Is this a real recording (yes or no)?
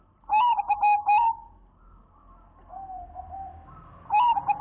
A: yes